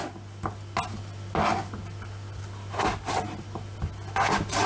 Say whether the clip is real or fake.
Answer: real